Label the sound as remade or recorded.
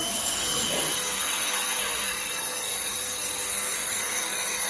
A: remade